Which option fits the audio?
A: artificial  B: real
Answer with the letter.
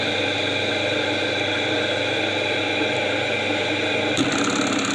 B